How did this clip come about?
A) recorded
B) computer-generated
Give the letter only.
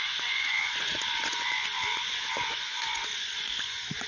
B